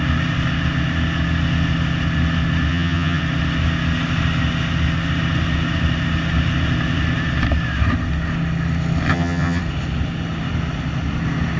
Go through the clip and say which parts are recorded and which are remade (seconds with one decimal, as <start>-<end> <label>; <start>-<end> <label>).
0.0-2.7 recorded; 2.7-3.2 remade; 3.2-9.1 recorded; 9.1-9.6 remade; 9.6-11.6 recorded